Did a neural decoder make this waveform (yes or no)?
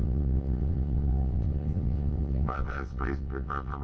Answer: yes